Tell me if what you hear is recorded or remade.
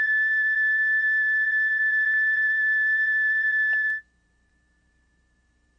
remade